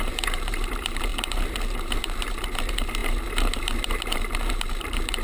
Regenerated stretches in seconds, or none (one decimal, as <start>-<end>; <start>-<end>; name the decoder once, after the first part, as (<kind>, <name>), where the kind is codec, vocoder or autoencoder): 0.0-5.2 (vocoder, BigVGAN v2)